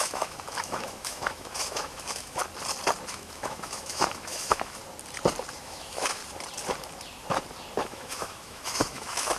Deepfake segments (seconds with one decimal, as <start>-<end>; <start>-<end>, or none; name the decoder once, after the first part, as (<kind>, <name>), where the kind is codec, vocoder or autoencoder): 0.0-2.4 (autoencoder, DAC-VAE); 3.1-4.8; 5.6-6.2; 7.8-9.4